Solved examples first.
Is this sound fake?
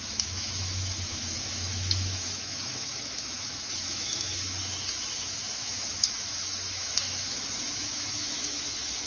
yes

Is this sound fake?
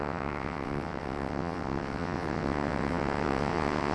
yes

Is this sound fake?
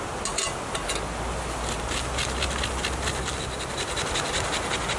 no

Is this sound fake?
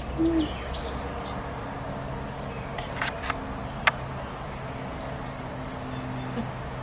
no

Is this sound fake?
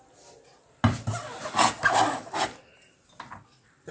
no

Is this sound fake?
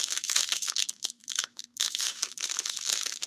yes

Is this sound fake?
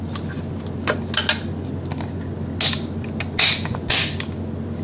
no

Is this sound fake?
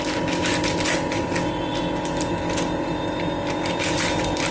no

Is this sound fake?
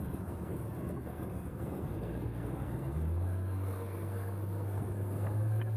yes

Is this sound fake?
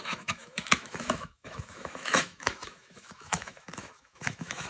yes